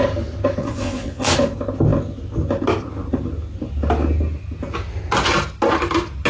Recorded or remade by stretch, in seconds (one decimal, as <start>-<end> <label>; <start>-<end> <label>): 0.0-0.6 recorded; 0.6-1.3 remade; 1.3-6.3 recorded